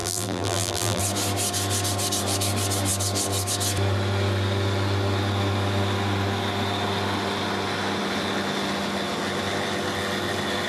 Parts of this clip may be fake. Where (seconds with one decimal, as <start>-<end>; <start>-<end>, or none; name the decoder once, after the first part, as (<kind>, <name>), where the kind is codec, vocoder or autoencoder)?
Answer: 0.0-1.0 (vocoder, BigVGAN v2)